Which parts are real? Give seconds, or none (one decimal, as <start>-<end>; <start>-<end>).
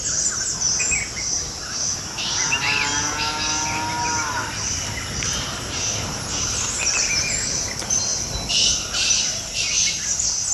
0.0-4.7; 7.1-10.5